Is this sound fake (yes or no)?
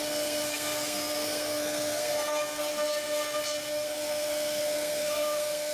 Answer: yes